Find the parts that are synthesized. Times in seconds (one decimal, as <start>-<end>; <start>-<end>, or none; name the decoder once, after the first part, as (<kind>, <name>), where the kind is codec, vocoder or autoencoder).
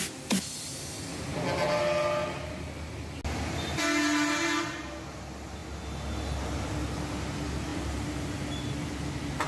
none